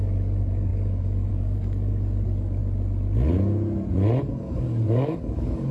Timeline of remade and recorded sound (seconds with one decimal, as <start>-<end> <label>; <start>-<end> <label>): 0.0-2.6 remade; 2.6-4.2 recorded; 4.2-5.7 remade